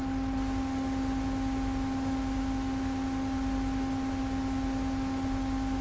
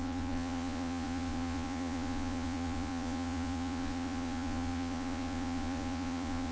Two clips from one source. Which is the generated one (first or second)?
second